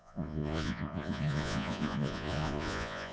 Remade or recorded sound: remade